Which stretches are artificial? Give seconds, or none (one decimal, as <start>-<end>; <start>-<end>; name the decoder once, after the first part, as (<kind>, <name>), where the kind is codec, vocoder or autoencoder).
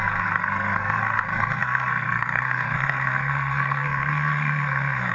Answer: 0.0-5.1 (codec, SNAC)